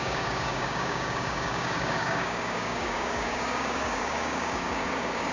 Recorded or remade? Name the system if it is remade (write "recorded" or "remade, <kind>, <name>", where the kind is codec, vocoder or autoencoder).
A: remade, codec, DAC